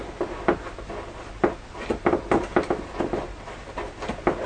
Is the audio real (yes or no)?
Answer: yes